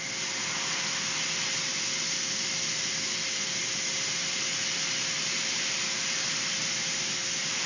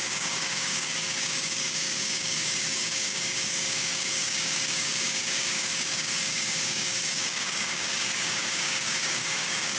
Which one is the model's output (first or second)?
second